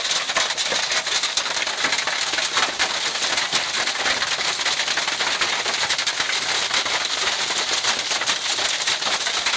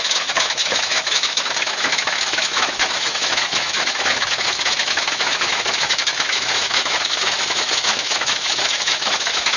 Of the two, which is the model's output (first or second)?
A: second